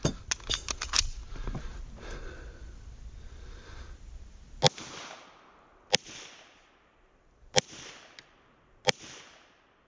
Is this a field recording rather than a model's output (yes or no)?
yes